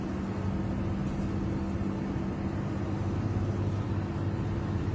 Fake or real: real